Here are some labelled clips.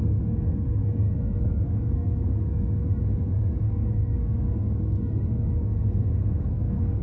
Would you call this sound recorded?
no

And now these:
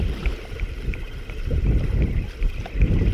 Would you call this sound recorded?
yes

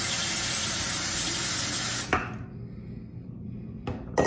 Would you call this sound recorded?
yes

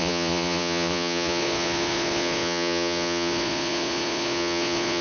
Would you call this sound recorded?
no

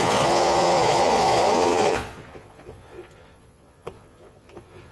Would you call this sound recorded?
no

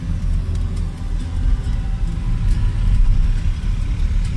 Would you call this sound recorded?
yes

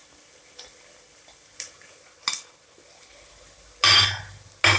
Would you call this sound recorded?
yes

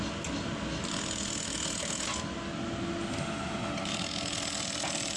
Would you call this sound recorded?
yes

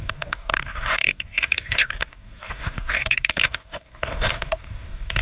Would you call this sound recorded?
no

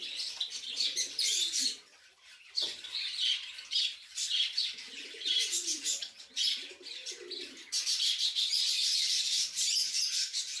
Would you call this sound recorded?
no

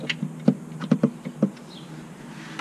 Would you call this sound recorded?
yes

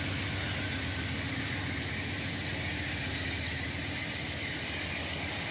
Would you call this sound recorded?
yes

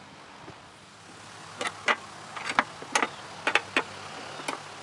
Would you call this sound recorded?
yes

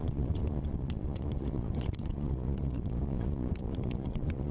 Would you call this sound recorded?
no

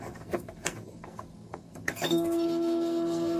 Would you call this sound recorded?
no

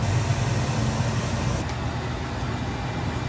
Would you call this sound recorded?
yes